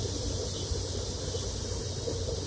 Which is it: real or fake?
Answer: real